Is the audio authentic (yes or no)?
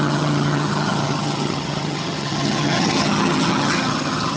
no